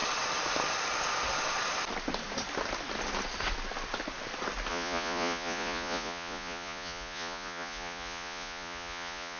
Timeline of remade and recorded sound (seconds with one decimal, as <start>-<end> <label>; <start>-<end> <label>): 0.0-4.7 recorded; 4.7-9.4 remade